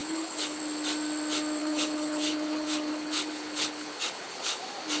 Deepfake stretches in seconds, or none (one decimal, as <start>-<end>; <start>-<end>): 0.0-0.6; 1.6-4.6